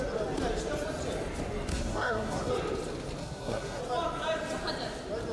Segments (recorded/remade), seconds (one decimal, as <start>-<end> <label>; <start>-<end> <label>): 0.0-1.7 recorded; 1.7-2.5 remade; 2.5-3.2 recorded; 3.2-3.8 remade; 3.8-5.3 recorded